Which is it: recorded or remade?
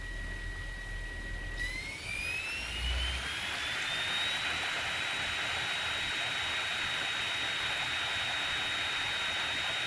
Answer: recorded